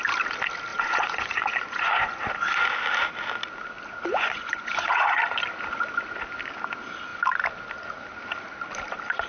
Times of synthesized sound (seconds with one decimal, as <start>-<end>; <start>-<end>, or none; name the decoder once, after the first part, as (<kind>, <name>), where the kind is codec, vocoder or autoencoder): 0.7-2.2 (vocoder, Vocos); 4.1-5.2